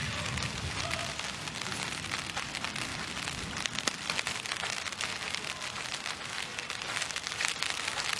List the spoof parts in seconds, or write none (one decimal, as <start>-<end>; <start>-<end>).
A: none